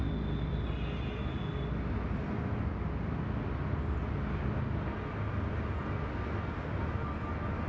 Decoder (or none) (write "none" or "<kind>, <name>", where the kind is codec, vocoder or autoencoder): none